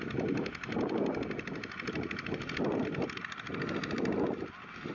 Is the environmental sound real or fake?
real